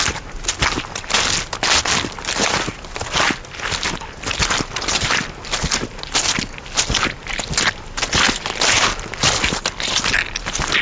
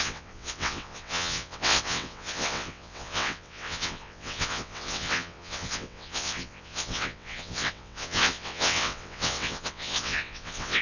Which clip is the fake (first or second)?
second